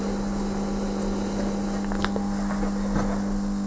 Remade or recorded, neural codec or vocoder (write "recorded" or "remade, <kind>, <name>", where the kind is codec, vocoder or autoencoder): recorded